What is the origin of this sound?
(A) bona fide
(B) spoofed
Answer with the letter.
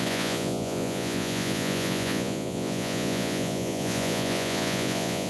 B